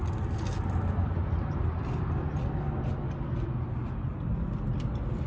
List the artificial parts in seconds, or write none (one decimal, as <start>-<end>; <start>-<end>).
none